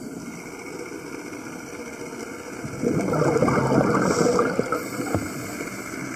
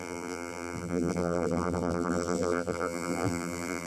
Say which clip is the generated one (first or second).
second